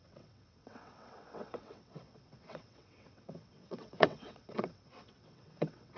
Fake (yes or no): yes